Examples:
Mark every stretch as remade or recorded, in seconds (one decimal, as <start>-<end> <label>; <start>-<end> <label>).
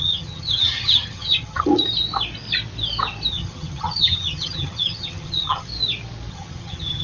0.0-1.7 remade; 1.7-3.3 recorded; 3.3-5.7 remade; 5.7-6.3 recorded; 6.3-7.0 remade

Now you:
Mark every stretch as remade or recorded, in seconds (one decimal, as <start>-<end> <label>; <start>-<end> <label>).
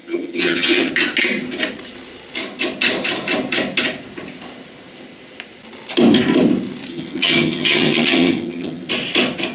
0.0-0.9 remade; 0.9-6.9 recorded; 6.9-8.9 remade; 8.9-9.5 recorded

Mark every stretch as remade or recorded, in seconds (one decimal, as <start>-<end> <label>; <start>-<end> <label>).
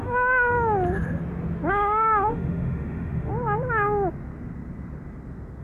0.0-0.5 remade; 0.5-1.7 recorded; 1.7-3.3 remade; 3.3-5.6 recorded